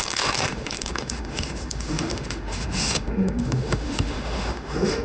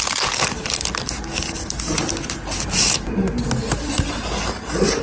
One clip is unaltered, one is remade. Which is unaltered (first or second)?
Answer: second